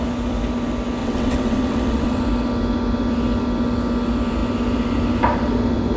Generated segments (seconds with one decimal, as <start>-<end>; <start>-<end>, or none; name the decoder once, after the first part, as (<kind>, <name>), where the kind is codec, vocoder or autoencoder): 1.0-2.2 (vocoder, WaveNeXt)

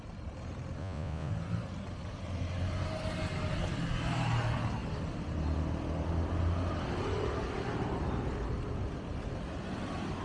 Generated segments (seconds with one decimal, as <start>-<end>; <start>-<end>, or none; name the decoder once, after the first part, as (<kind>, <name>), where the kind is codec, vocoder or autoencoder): 0.8-1.3 (vocoder, Vocos)

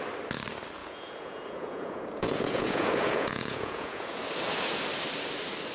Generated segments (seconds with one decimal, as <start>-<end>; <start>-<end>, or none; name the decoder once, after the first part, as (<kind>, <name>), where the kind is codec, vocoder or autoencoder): 0.8-4.2 (vocoder, Vocos)

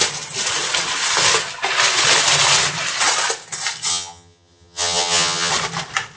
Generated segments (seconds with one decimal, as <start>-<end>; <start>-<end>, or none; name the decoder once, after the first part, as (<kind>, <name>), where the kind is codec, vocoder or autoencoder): 3.9-5.5 (vocoder, HiFi-GAN)

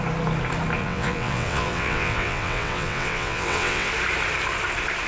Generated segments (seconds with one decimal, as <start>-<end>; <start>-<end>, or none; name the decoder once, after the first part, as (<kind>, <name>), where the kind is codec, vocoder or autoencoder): 0.8-3.9 (vocoder, WaveNeXt)

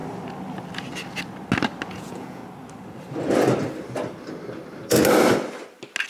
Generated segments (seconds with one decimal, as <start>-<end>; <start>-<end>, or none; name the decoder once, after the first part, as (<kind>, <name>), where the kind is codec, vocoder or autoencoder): 1.9-2.4 (vocoder, Vocos)